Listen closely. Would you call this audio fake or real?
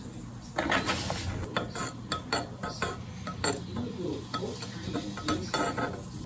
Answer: real